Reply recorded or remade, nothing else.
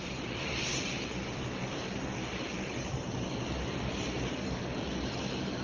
remade